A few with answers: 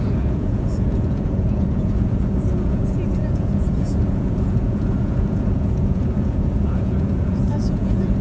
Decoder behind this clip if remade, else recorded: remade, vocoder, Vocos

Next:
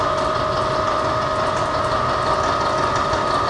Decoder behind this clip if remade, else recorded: recorded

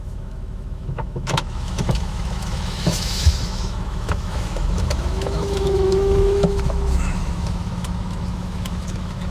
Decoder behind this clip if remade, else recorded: remade, autoencoder, DAC-VAE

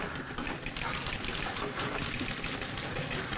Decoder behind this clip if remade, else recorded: recorded